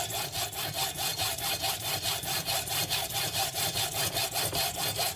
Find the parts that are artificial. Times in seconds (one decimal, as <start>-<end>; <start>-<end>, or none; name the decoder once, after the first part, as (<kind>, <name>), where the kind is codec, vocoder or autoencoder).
1.1-3.6 (vocoder, BigVGAN v2)